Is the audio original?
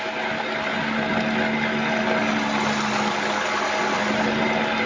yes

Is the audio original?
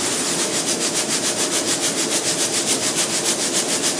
no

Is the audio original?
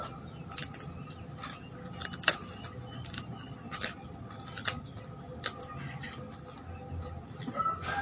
yes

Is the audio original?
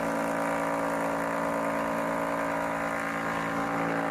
yes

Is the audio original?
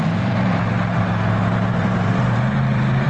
no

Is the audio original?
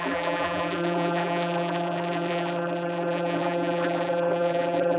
no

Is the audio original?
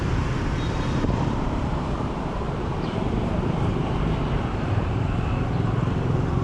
no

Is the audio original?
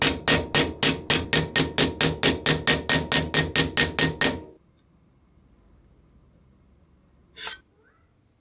yes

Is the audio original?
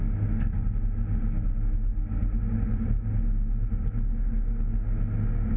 yes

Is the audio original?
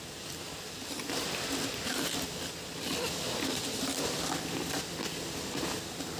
yes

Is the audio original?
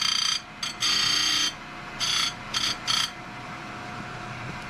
yes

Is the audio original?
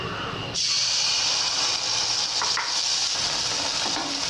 yes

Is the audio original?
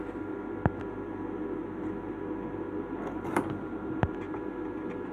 yes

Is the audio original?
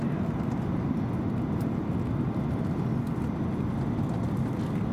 yes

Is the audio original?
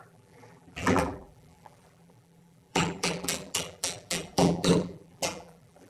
no